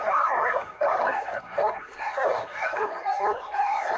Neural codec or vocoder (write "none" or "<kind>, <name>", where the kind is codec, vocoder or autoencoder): codec, SNAC